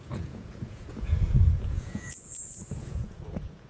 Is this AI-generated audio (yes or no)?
yes